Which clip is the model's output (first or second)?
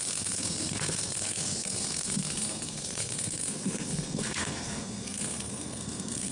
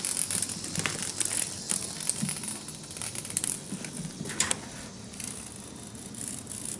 first